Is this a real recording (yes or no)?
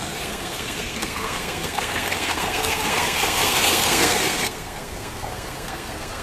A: no